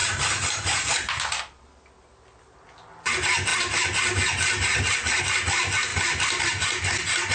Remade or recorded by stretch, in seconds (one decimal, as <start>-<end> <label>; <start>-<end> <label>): 0.0-1.4 remade; 1.4-5.9 recorded; 5.9-6.4 remade; 6.4-7.3 recorded